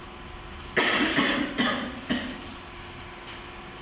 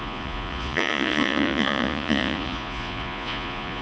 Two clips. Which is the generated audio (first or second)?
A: second